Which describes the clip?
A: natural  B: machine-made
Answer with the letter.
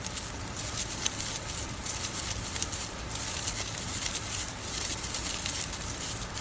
A